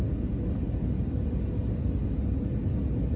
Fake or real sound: real